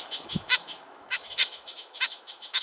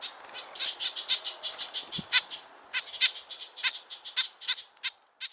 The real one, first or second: second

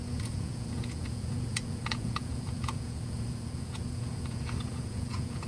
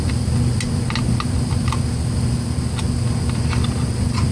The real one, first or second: second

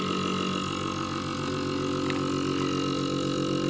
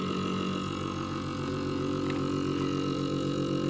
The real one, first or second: first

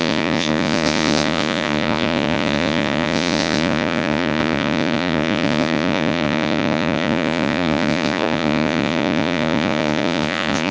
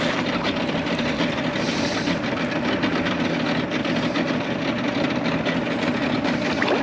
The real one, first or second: second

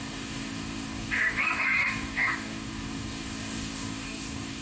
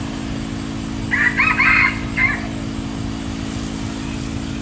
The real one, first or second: second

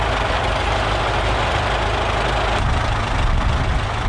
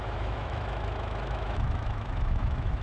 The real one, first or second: first